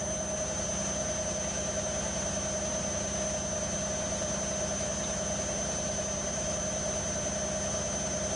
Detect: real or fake real